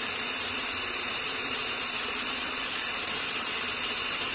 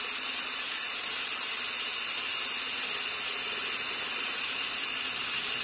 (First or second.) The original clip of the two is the second